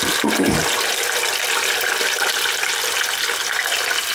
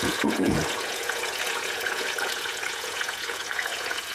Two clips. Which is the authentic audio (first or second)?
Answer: first